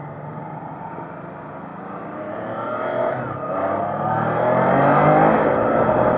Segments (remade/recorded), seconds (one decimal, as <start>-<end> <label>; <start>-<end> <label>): 0.0-0.4 recorded; 0.4-0.9 remade; 0.9-6.2 recorded